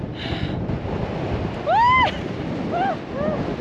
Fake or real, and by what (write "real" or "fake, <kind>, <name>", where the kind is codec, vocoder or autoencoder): real